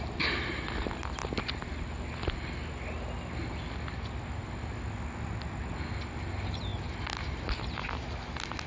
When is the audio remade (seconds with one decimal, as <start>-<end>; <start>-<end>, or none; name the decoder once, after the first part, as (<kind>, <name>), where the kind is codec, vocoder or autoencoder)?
none